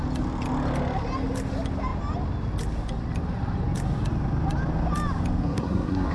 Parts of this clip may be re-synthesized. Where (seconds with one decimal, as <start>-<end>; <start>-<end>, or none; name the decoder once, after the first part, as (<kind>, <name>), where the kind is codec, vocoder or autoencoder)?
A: 5.4-6.1 (codec, SNAC)